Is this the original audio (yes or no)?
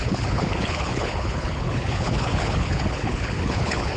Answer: no